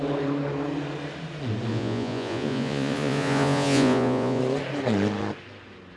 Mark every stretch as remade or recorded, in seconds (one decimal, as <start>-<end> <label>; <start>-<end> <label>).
0.0-1.7 recorded; 1.7-4.4 remade; 4.4-6.0 recorded